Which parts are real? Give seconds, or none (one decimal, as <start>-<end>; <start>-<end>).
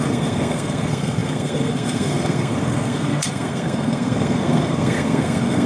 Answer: none